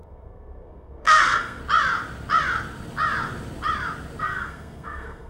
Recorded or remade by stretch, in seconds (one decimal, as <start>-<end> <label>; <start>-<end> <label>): 0.0-1.6 remade; 1.6-4.2 recorded; 4.2-5.3 remade